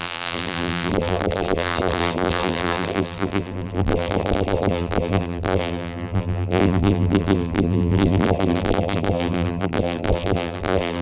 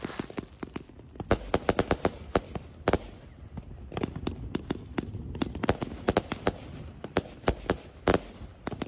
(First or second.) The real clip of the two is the second